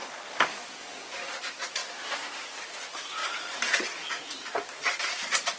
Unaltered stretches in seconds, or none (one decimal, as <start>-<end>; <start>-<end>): 1.3-5.6